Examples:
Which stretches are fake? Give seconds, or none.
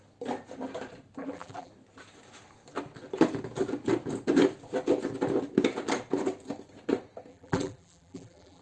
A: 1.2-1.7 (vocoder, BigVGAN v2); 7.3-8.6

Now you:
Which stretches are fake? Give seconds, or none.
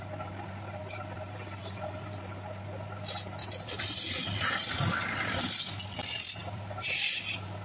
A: 0.8-1.9 (vocoder, BigVGAN v2); 3.4-6.0; 6.4-7.1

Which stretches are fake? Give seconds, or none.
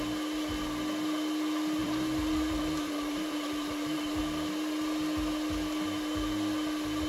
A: 1.8-4.2 (vocoder, BigVGAN v2)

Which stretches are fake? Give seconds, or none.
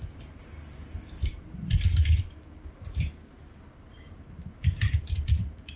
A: 0.0-5.8 (vocoder, BigVGAN v2)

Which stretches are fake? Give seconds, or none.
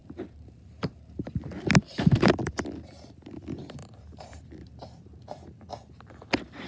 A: 0.0-1.3 (vocoder, BigVGAN v2); 3.8-5.7